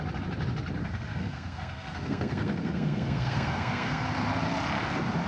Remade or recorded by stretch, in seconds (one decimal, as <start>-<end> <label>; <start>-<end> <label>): 0.0-0.8 recorded; 0.8-4.0 remade; 4.0-5.3 recorded